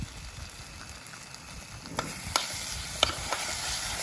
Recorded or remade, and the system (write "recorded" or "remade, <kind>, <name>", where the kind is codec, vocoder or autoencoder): recorded